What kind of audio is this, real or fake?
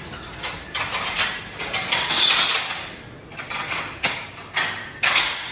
real